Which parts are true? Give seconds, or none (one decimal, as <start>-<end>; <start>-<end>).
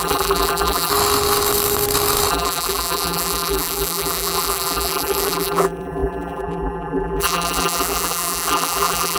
0.9-2.3